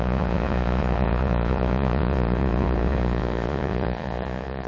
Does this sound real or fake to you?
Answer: fake